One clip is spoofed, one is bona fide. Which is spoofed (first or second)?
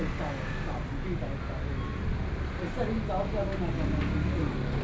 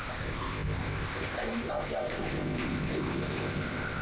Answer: second